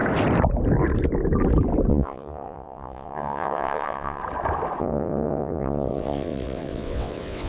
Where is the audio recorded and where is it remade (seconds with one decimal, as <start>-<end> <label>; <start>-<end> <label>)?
0.0-1.9 recorded; 1.9-4.2 remade; 4.2-4.8 recorded; 4.8-7.5 remade